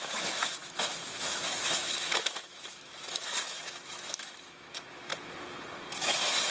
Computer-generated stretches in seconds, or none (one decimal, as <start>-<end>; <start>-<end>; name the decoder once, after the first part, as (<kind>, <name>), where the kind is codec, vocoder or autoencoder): 0.0-5.1 (autoencoder, DAC-VAE); 6.0-6.5